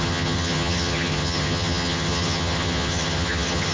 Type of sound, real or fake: fake